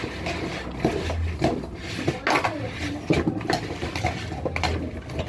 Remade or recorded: recorded